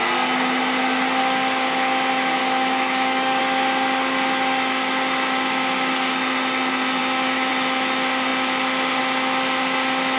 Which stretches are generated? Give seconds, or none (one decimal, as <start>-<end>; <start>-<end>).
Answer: 2.4-3.4; 7.0-7.5